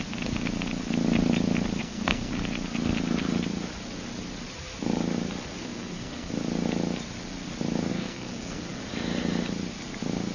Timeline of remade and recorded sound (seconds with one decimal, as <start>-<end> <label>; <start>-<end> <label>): 0.0-1.8 recorded; 1.8-2.3 remade; 2.3-5.6 recorded; 5.6-6.3 remade; 6.3-7.9 recorded; 7.9-8.8 remade; 8.8-10.3 recorded